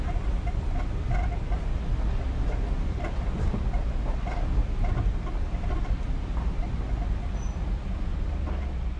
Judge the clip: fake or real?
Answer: real